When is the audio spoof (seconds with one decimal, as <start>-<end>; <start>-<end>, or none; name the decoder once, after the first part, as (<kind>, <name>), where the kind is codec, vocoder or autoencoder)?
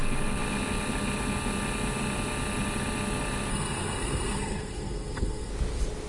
3.5-5.5 (codec, SNAC)